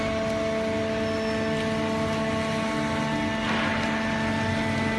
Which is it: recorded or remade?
recorded